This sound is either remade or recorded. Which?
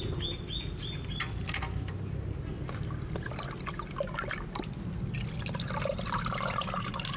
recorded